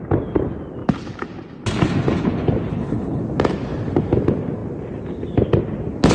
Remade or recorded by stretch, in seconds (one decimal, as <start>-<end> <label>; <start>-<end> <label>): 0.0-2.7 recorded; 2.7-3.2 remade; 3.2-6.1 recorded